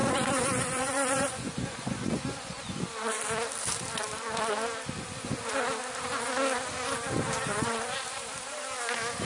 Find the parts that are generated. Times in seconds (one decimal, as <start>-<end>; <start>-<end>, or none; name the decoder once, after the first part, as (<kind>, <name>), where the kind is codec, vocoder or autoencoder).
0.0-2.8 (vocoder, Vocos)